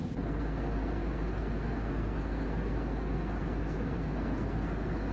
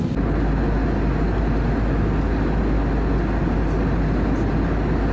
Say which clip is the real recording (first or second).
second